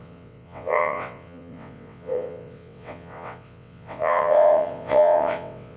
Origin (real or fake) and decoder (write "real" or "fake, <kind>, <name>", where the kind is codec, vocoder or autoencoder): fake, vocoder, WaveNeXt